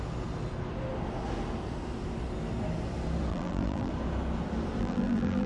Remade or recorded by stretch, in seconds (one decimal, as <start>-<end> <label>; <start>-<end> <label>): 0.0-3.3 recorded; 3.3-3.9 remade; 3.9-4.8 recorded; 4.8-5.5 remade